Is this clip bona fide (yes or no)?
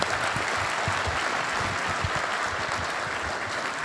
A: yes